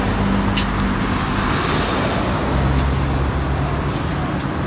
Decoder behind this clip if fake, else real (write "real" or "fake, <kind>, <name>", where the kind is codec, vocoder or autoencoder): real